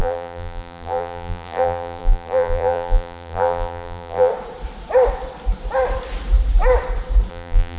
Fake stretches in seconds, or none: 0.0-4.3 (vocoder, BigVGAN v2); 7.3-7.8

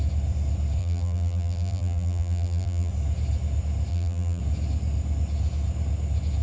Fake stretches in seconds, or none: 0.8-2.9 (vocoder, BigVGAN v2); 3.9-4.4

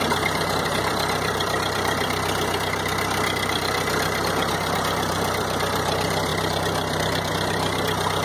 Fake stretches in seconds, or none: 0.0-8.2 (vocoder, BigVGAN v2)